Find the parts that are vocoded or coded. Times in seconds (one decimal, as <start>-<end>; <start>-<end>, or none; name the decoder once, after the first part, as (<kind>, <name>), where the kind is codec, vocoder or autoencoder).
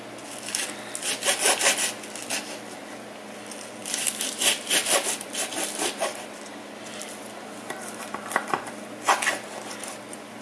3.8-6.2 (vocoder, BigVGAN v2)